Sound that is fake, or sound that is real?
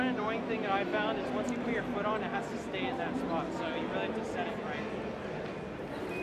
real